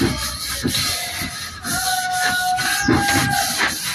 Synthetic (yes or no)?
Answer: no